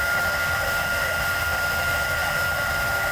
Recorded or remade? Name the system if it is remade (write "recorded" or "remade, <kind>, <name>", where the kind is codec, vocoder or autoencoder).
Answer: remade, autoencoder, DAC-VAE